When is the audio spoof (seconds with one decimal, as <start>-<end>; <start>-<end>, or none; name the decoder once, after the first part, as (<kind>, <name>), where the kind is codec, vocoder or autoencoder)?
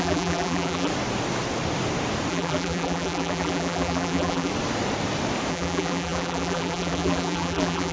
0.0-0.9 (vocoder, BigVGAN v2); 2.3-4.5; 5.5-7.9